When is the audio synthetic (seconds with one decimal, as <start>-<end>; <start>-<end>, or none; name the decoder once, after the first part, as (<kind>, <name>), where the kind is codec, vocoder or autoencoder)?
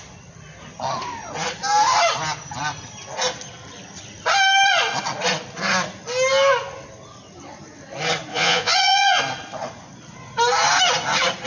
8.3-9.2 (vocoder, Vocos)